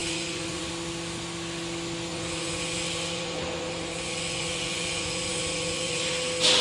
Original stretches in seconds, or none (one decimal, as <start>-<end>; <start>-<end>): 0.7-2.1; 6.1-6.6